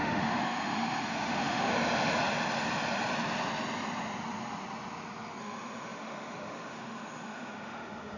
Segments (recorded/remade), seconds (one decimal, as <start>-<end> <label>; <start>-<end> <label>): 0.0-1.7 remade; 1.7-5.4 recorded; 5.4-8.2 remade